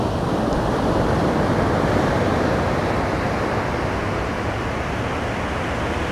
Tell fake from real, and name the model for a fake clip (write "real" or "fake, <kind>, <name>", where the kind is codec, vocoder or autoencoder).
real